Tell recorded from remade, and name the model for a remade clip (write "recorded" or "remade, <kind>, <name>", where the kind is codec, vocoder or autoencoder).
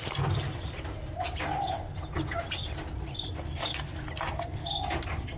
recorded